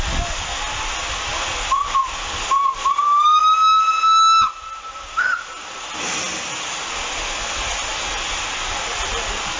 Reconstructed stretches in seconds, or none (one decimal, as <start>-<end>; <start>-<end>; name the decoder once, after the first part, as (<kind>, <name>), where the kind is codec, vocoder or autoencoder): none